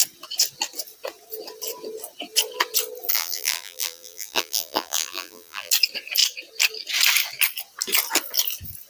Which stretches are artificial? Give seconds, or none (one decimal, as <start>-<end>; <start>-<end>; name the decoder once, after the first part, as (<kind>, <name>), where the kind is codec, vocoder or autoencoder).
3.1-5.7 (vocoder, BigVGAN v2)